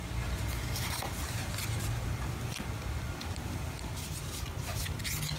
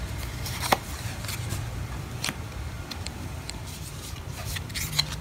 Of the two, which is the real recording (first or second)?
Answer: first